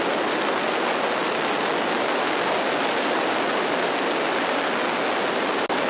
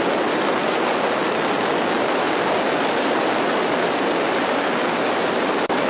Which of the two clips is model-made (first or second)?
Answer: second